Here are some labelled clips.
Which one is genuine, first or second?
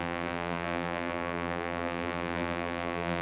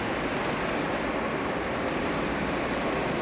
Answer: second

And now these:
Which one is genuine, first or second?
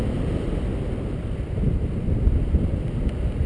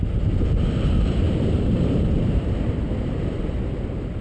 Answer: first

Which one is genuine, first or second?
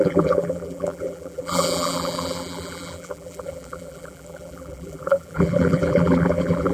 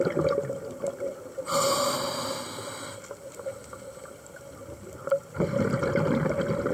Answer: second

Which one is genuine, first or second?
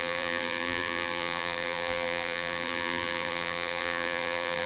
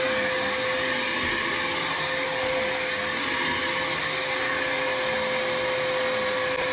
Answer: second